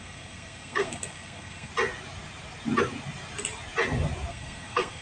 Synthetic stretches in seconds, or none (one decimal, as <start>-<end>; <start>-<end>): 0.0-1.7; 4.3-5.0